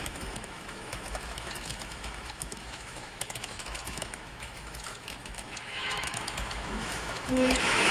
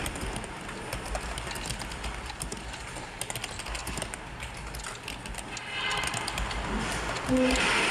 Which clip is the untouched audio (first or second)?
second